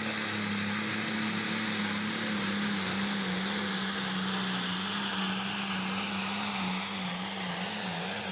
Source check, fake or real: real